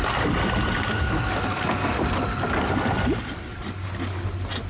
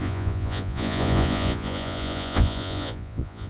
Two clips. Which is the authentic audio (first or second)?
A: first